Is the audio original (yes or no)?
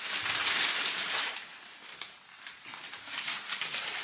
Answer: no